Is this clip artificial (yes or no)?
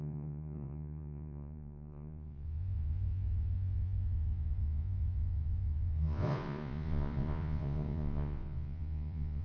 yes